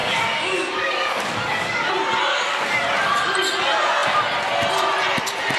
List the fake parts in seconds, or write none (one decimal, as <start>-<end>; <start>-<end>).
0.0-1.9; 2.3-2.8